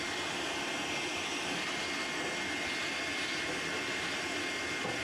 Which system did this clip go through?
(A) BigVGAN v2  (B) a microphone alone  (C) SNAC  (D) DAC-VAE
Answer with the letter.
B